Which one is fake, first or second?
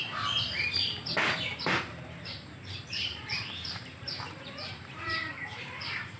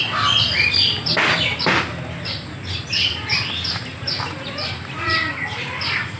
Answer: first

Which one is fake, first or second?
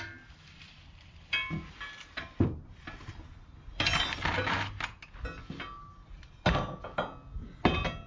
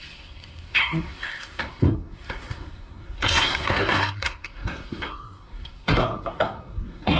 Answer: second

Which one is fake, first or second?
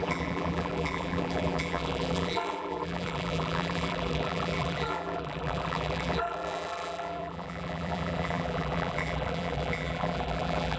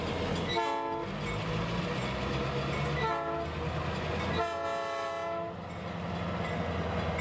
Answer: first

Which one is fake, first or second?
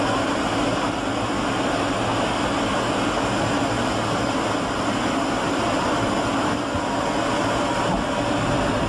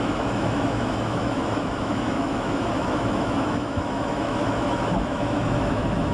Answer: second